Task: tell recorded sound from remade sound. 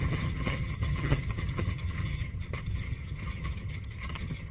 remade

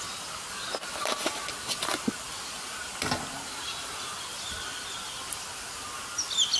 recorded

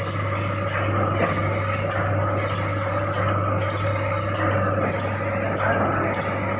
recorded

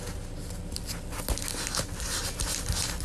recorded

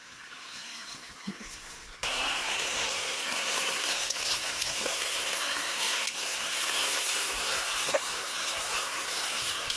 remade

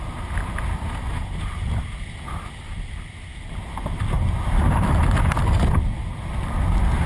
recorded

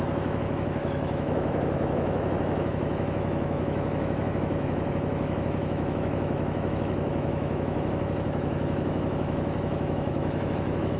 remade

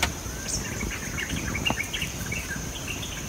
recorded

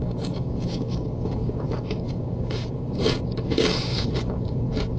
remade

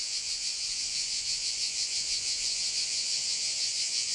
remade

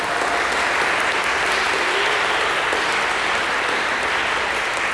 recorded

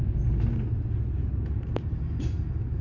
recorded